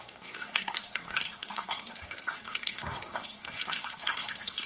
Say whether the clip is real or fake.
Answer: fake